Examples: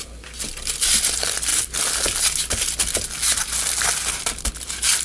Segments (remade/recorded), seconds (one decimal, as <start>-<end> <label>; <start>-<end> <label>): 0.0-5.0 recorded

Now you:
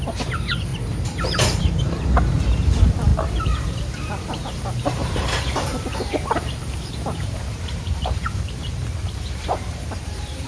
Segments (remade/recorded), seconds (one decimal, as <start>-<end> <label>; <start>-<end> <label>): 0.0-10.5 remade

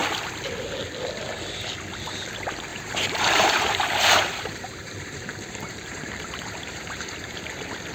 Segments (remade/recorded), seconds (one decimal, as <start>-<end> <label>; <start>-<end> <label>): 0.0-2.7 recorded; 2.7-7.4 remade; 7.4-7.9 recorded

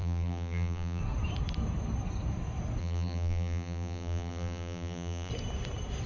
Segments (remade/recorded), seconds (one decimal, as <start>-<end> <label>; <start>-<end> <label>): 0.0-1.0 remade; 1.0-2.8 recorded; 2.8-5.3 remade; 5.3-6.1 recorded

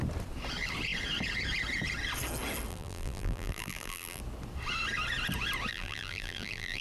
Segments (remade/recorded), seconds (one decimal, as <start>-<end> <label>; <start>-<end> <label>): 0.0-2.7 recorded; 2.7-4.2 remade; 4.2-5.7 recorded; 5.7-6.8 remade

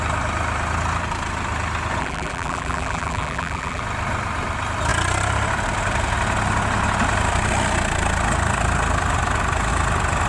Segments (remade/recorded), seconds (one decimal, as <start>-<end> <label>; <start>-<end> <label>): 0.0-2.0 recorded; 2.0-3.8 remade; 3.8-10.3 recorded

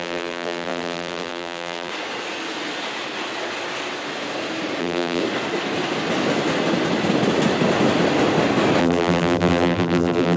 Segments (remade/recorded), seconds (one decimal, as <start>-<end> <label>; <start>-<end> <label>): 0.0-1.9 remade; 1.9-4.8 recorded; 4.8-5.2 remade; 5.2-8.8 recorded; 8.8-10.4 remade